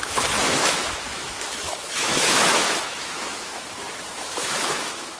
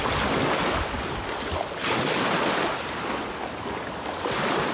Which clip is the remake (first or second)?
first